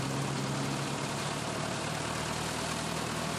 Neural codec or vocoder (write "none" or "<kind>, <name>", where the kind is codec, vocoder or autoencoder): none